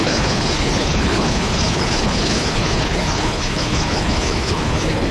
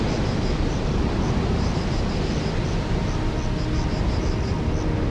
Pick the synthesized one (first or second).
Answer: first